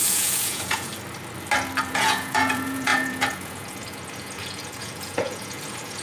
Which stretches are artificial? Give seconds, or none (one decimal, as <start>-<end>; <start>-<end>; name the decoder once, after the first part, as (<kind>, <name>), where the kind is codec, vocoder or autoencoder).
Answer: 0.0-0.9 (vocoder, Vocos); 1.9-6.0

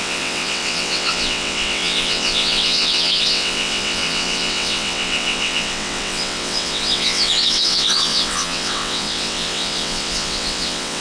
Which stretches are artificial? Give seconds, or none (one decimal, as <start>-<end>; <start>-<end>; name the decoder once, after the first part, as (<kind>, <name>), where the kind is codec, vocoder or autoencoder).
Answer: 0.0-11.0 (vocoder, WaveNeXt)

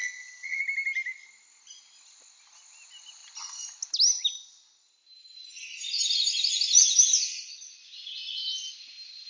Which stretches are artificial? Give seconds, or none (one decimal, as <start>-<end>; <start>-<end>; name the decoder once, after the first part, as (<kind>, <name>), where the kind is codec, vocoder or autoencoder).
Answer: 0.0-0.6 (vocoder, WaveNeXt)

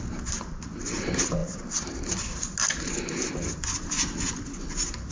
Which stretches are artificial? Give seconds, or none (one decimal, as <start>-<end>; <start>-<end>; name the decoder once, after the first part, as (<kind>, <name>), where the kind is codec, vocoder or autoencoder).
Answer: none

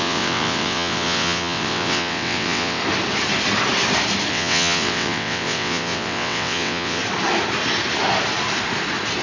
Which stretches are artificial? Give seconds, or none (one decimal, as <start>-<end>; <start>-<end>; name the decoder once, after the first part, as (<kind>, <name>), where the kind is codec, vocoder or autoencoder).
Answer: 0.0-2.8 (vocoder, WaveNeXt); 4.3-7.0

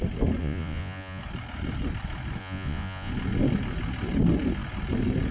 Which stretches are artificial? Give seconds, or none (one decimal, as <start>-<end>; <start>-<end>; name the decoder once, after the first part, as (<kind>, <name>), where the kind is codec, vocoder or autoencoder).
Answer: 0.4-1.2 (vocoder, Vocos); 2.4-3.1

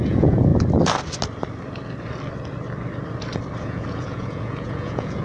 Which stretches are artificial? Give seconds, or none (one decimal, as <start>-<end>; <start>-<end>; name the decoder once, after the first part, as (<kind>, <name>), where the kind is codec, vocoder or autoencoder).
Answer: 0.0-0.5 (vocoder, Vocos); 3.6-5.2